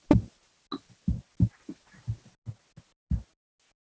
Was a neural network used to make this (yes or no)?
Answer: no